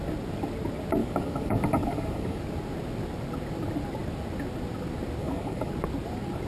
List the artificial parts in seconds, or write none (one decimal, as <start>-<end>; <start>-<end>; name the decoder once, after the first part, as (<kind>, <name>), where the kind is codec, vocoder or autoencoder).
1.0-2.4 (codec, DAC); 5.2-5.7